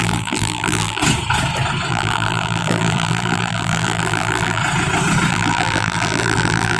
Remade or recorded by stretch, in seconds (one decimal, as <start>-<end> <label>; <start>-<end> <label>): 0.0-1.0 remade; 1.0-1.9 recorded; 1.9-4.6 remade; 4.6-5.3 recorded; 5.3-6.8 remade